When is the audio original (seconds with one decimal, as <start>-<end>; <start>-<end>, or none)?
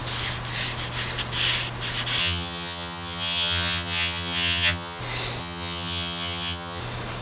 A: 0.0-2.2; 5.0-5.4; 6.8-7.2